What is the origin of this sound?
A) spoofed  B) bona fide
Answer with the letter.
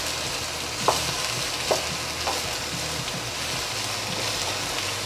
B